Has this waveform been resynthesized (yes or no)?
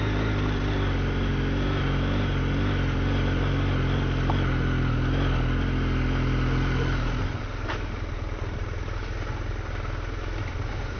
no